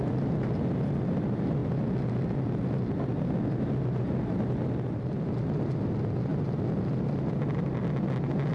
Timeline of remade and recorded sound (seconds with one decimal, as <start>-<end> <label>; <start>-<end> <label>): 0.0-8.5 recorded